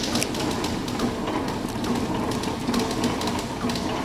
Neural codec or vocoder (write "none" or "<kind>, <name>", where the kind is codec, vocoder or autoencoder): none